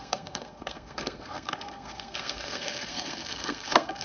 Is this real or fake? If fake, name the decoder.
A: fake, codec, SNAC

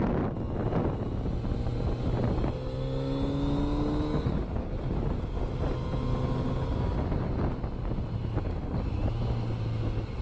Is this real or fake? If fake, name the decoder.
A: real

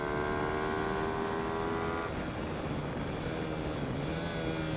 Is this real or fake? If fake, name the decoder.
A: real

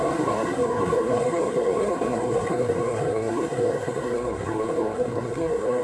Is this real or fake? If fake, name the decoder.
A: fake, codec, SNAC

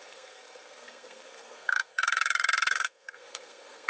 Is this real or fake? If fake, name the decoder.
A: fake, codec, SNAC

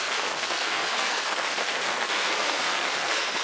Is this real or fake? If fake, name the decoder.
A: fake, codec, SNAC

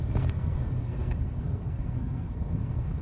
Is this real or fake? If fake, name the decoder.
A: fake, codec, SNAC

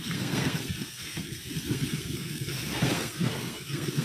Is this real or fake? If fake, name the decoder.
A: fake, codec, SNAC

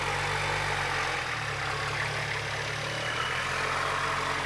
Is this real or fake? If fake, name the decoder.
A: real